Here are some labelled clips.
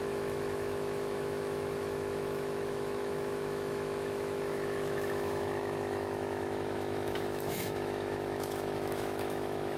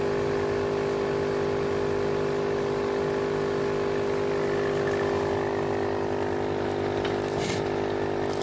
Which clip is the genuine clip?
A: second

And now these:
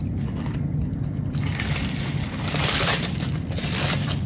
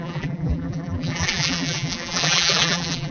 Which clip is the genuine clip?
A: first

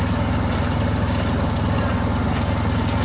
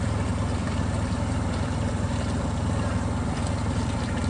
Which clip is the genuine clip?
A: first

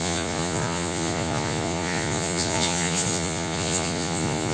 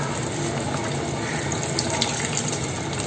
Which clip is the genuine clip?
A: second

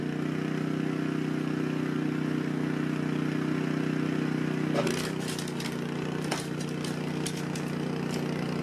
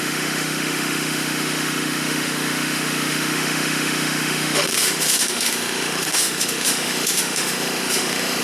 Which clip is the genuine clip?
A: first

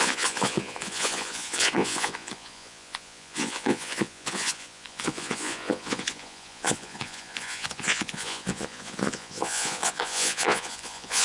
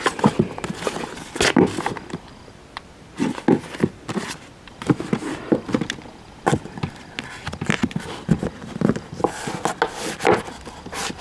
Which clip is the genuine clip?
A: second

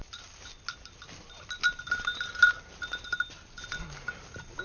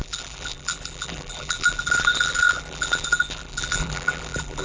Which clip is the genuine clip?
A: first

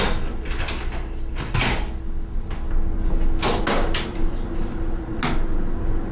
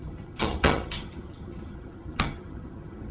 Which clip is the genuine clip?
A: first